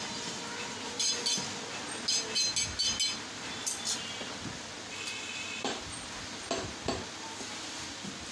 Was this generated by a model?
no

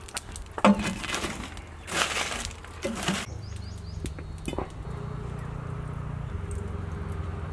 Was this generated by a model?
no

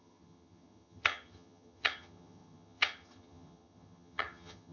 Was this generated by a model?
yes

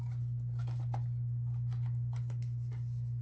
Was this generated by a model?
no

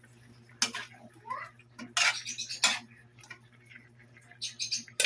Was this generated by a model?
no